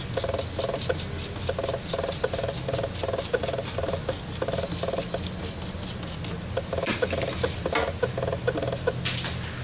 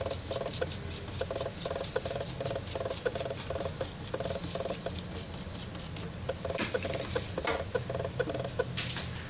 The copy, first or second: second